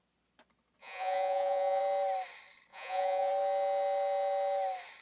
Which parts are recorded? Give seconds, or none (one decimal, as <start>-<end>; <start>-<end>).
0.0-0.8; 1.8-2.7; 3.3-5.0